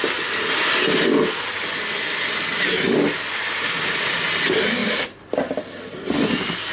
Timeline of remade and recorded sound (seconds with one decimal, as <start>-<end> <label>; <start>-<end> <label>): 0.0-6.7 recorded